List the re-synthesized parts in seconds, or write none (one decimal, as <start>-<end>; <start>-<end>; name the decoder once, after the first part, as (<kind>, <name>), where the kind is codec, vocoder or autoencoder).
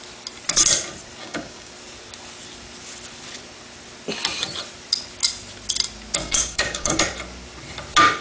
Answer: 1.2-1.7 (codec, DAC); 6.2-7.0